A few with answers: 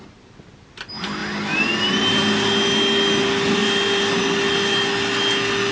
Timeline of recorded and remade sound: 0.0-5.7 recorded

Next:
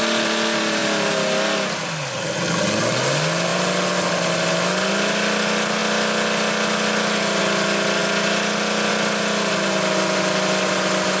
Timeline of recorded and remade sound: 0.0-11.2 recorded